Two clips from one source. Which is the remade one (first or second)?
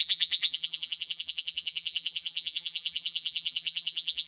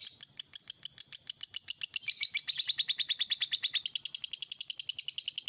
first